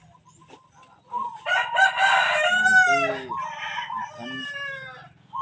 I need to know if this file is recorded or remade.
recorded